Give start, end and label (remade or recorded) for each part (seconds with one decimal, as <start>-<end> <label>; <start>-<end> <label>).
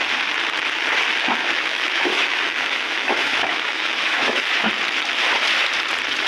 0.0-1.4 recorded; 1.4-4.7 remade; 4.7-6.3 recorded